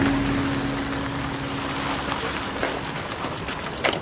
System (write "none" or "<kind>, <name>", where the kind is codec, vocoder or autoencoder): none